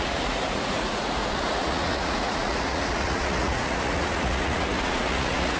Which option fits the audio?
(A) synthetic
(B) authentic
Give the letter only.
A